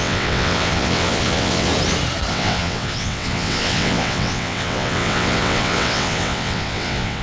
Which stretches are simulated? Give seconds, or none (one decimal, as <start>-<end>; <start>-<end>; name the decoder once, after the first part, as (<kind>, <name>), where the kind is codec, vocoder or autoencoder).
0.0-1.7 (vocoder, WaveNeXt); 2.3-7.2